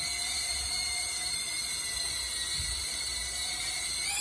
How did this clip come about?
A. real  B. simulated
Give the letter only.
A